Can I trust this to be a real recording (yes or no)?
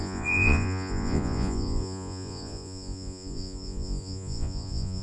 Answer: no